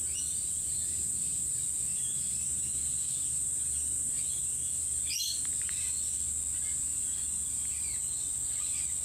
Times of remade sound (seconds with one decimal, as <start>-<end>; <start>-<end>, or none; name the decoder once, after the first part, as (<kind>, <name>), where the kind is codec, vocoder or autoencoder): none